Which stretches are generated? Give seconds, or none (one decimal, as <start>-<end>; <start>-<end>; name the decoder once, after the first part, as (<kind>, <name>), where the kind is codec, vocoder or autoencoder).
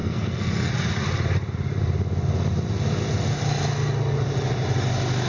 0.0-0.7 (codec, SNAC)